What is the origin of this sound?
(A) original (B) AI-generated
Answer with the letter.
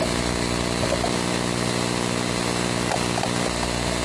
A